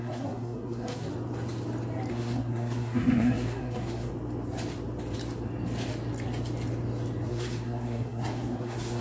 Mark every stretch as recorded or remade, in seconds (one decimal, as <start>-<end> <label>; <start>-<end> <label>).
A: 0.0-1.1 remade; 1.1-2.1 recorded; 2.1-4.1 remade; 4.1-7.3 recorded; 7.3-9.0 remade

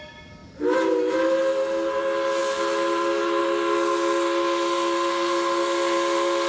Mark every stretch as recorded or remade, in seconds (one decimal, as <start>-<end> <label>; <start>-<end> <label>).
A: 0.0-6.5 recorded